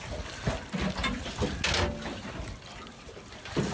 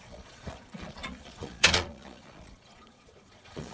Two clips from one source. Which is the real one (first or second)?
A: first